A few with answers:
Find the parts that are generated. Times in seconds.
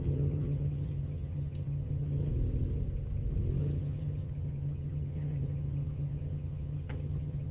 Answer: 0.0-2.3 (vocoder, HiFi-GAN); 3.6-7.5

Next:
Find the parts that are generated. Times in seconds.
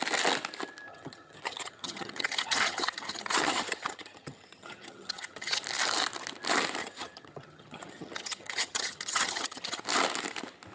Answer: 0.9-5.6 (vocoder, HiFi-GAN); 6.8-9.8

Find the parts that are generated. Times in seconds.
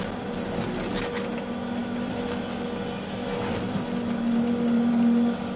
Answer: none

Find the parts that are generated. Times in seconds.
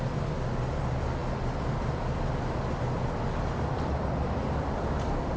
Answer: none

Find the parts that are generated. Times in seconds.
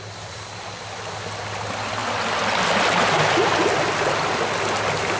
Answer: none